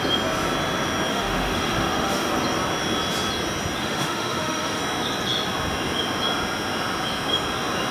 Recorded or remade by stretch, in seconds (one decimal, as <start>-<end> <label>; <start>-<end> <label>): 0.0-1.1 recorded; 1.1-2.3 remade; 2.3-3.8 recorded; 3.8-4.8 remade; 4.8-7.9 recorded